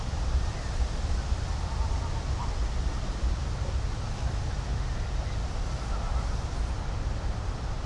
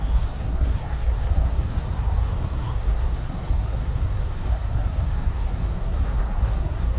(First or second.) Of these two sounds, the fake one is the second